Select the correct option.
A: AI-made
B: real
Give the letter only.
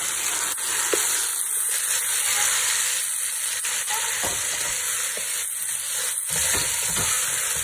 B